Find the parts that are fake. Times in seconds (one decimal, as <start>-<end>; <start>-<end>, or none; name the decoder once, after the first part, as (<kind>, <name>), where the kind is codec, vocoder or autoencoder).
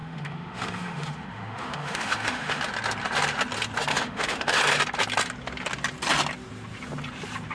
0.0-2.6 (autoencoder, DAC-VAE); 3.9-4.6